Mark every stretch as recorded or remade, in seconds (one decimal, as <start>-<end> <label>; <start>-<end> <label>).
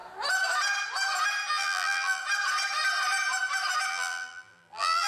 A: 0.0-1.5 recorded; 1.5-2.2 remade; 2.2-3.9 recorded; 3.9-5.1 remade